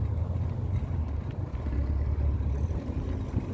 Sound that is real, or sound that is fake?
real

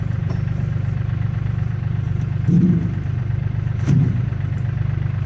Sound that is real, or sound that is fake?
fake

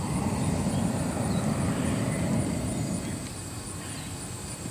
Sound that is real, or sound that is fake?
real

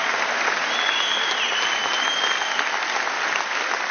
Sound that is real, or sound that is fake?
real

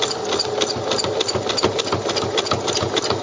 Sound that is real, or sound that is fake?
real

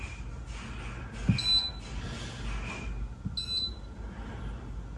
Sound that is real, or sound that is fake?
real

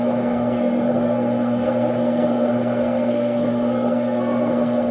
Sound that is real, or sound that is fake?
fake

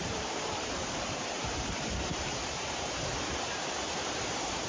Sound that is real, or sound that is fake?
fake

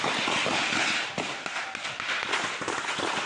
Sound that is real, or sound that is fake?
real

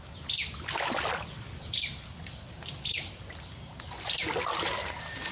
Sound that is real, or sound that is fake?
real